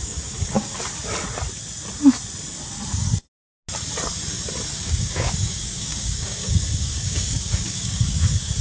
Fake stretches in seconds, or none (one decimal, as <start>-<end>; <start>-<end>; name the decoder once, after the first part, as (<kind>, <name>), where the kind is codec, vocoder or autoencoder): 0.0-0.7 (codec, DAC); 4.7-8.6